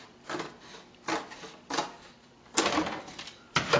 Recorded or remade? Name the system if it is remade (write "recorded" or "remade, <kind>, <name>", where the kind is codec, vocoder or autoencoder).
recorded